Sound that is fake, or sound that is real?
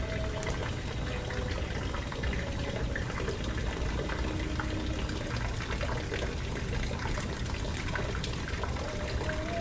real